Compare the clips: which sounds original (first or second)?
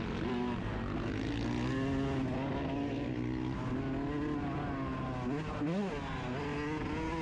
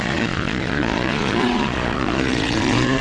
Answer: first